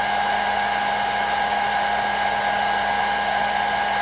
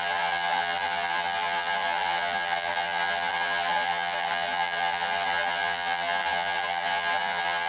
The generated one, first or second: second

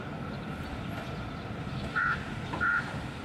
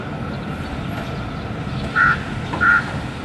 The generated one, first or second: first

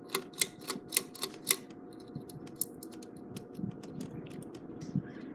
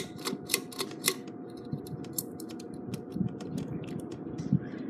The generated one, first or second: second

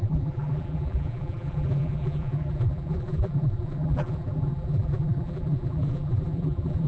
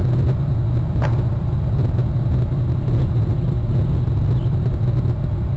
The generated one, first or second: first